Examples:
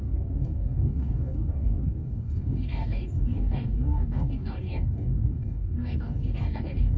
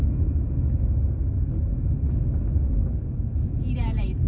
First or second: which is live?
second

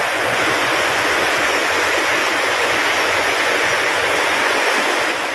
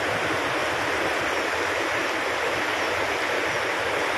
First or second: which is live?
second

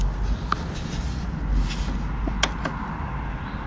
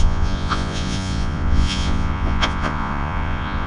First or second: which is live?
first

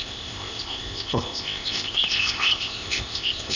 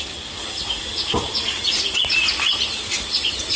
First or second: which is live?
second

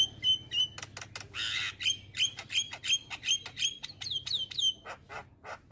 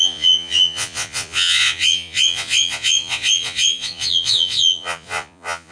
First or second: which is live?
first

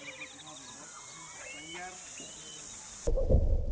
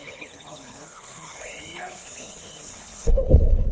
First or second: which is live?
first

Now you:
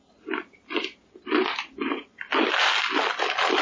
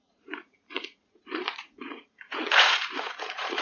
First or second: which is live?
first